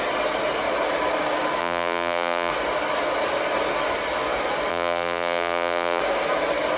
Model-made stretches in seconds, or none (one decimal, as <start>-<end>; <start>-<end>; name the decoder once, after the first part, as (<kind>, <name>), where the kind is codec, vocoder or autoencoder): 1.6-2.5 (vocoder, BigVGAN v2); 4.7-6.0